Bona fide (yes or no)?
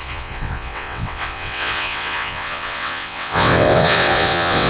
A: no